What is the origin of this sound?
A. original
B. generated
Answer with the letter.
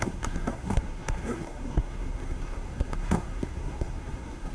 B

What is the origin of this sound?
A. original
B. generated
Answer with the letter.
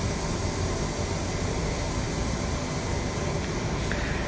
A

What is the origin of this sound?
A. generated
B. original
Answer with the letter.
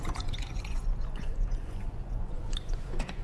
A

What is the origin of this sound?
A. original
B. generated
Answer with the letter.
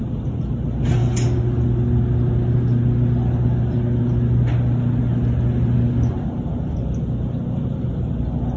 A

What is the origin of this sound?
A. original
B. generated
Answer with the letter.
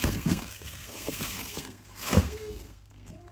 B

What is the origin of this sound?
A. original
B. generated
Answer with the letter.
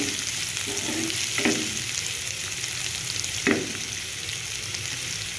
A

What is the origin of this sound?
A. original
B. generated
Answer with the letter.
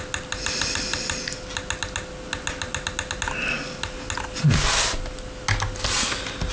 A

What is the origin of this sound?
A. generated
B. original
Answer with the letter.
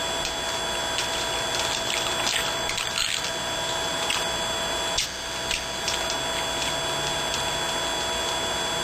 B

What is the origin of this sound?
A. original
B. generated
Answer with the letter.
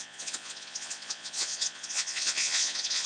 B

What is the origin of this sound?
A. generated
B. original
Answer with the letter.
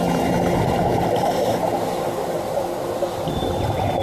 B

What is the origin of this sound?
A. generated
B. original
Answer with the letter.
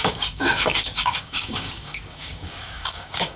A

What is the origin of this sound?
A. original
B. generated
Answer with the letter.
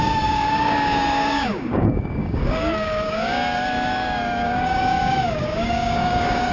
B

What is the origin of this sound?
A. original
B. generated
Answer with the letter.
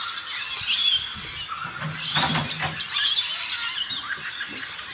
A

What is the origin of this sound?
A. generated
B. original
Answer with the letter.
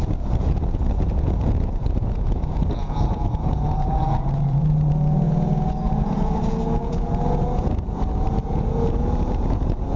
A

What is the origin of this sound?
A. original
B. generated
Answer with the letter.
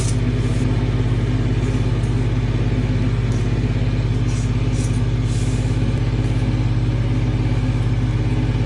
A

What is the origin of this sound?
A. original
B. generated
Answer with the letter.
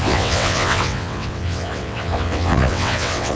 B